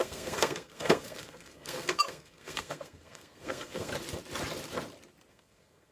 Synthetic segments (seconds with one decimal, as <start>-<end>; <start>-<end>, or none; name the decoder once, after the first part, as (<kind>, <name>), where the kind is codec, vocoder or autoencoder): 0.0-3.9 (codec, SNAC); 5.3-5.9